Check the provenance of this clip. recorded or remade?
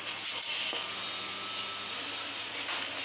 recorded